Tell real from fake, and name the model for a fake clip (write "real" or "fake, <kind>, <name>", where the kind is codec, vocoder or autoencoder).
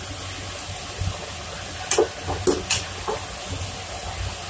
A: real